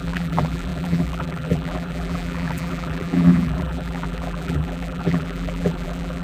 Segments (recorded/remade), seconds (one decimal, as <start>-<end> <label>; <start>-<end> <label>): 0.0-6.2 remade